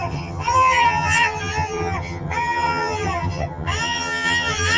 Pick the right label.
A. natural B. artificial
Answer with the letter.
B